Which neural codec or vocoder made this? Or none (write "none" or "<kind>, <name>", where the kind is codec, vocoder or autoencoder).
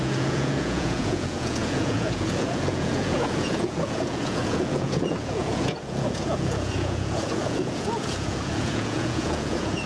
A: vocoder, Vocos